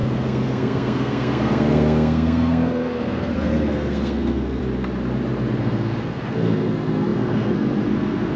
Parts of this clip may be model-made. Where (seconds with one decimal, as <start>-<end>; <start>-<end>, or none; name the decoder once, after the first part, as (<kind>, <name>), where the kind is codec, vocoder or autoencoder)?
0.0-4.6 (codec, SNAC); 5.6-8.4